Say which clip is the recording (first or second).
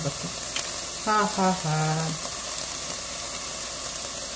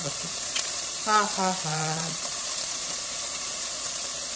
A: first